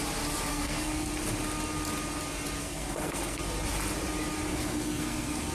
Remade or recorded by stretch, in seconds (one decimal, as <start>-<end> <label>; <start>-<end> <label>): 0.0-0.5 recorded; 0.5-1.1 remade; 1.1-2.6 recorded; 2.6-3.4 remade; 3.4-4.5 recorded; 4.5-5.5 remade